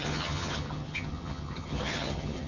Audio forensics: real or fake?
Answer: fake